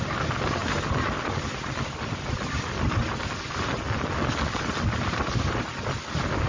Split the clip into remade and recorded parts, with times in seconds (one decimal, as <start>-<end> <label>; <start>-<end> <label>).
0.0-6.5 recorded